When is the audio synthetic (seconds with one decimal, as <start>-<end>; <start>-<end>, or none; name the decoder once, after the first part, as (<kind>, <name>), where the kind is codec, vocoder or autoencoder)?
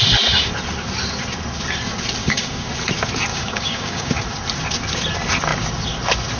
2.2-2.7 (codec, DAC); 3.3-4.1